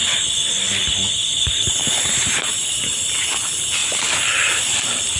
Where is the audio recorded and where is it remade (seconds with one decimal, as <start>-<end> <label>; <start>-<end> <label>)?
0.0-1.2 recorded; 1.2-3.1 remade; 3.1-5.2 recorded